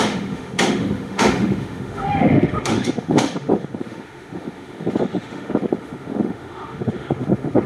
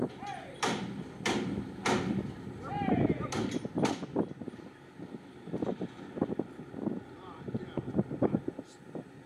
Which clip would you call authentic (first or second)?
second